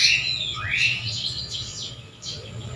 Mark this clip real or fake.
fake